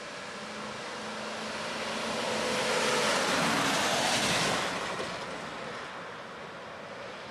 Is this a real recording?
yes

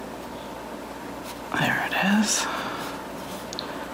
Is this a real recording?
yes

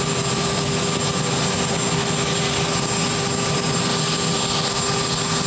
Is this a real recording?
yes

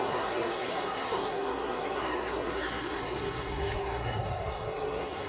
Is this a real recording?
no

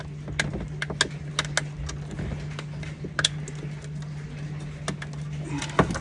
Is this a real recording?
yes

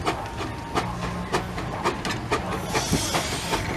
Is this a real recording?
yes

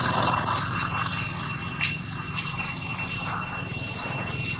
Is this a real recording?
yes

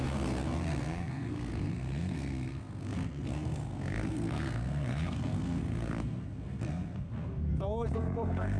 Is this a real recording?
no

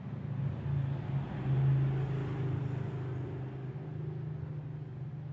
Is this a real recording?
yes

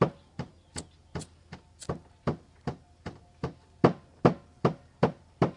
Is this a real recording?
yes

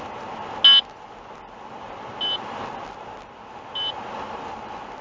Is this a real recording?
yes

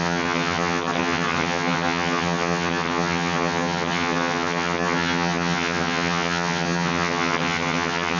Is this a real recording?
no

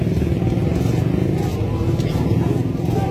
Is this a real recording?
yes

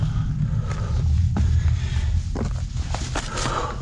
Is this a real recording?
yes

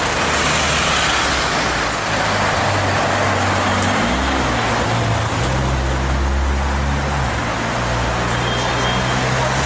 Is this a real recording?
yes